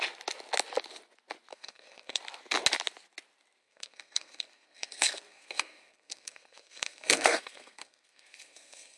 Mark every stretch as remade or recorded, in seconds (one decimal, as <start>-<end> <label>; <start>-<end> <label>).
0.0-1.5 recorded; 1.5-2.2 remade; 2.2-3.6 recorded; 3.6-9.0 remade